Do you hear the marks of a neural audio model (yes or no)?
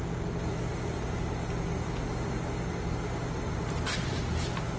no